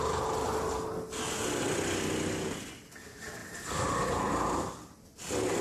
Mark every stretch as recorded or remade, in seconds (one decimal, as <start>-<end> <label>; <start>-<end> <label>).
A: 0.0-5.6 recorded